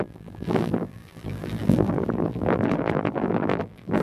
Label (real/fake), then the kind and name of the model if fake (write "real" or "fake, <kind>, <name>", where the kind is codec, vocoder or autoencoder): fake, vocoder, BigVGAN v2